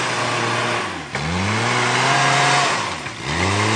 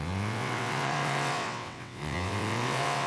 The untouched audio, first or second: first